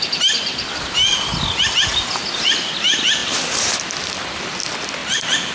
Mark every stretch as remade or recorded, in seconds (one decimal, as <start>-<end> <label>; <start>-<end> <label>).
0.0-3.2 recorded; 3.2-4.4 remade; 4.4-5.0 recorded; 5.0-5.5 remade